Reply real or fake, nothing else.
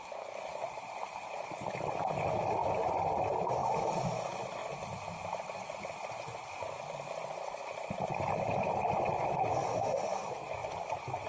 real